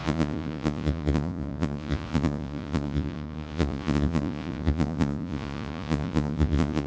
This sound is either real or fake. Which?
fake